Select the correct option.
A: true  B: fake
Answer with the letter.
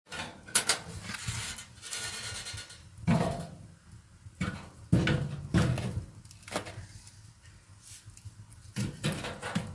A